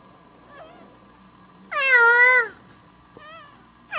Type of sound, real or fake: real